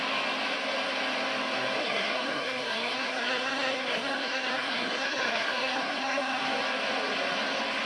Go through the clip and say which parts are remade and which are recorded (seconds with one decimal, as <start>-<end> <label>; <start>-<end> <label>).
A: 0.0-1.8 recorded; 1.8-6.4 remade; 6.4-7.9 recorded